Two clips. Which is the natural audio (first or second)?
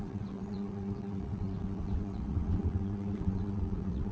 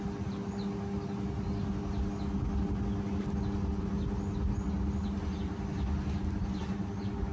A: second